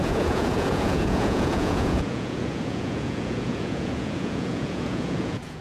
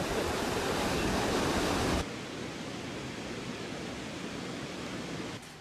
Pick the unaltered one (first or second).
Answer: second